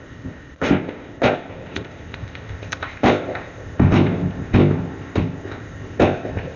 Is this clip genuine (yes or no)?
no